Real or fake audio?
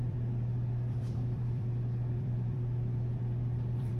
fake